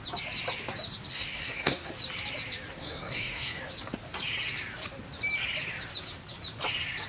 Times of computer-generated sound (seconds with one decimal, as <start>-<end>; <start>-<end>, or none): 1.1-1.9; 2.8-3.6